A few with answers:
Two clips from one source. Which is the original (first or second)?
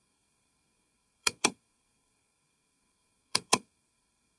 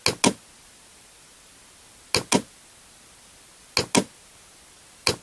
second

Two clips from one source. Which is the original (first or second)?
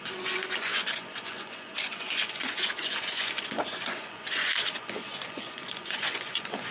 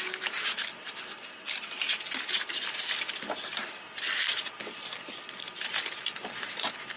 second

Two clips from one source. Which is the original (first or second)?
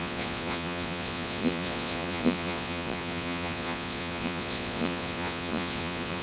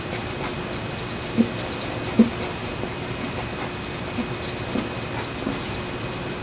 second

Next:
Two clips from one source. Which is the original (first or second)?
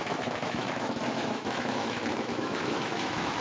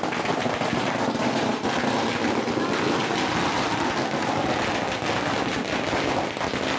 second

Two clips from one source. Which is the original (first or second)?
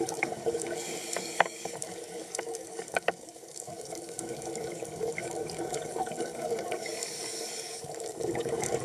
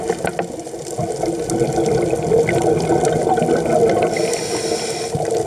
second